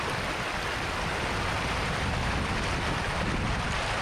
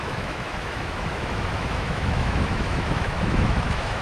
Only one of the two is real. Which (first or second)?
first